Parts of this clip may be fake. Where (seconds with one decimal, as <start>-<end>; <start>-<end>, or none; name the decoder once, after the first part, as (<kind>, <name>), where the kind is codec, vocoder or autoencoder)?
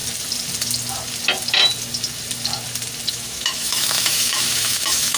3.1-5.2 (autoencoder, DAC-VAE)